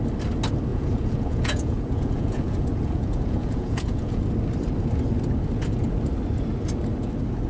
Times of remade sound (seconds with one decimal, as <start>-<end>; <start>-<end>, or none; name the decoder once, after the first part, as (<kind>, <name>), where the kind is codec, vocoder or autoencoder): 0.7-4.2 (vocoder, Vocos)